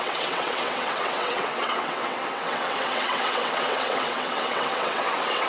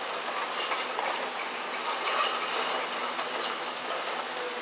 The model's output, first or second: first